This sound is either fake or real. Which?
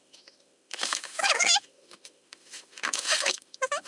fake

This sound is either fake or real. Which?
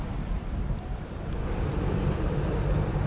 fake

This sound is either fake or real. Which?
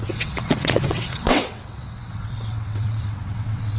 fake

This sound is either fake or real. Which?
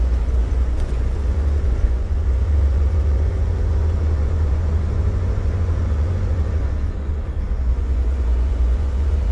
fake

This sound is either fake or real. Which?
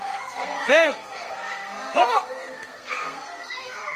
fake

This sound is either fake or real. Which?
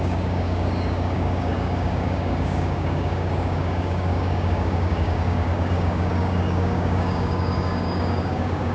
fake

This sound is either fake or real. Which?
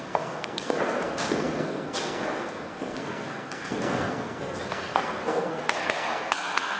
fake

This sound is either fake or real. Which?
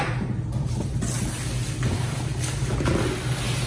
real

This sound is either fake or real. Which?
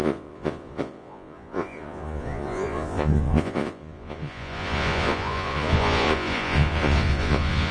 fake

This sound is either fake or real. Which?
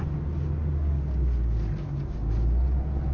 real